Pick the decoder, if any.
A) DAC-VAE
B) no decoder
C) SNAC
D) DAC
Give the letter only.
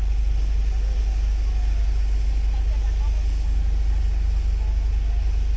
B